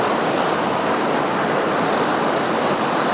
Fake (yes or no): no